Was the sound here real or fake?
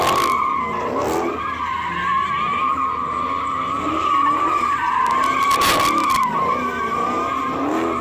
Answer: real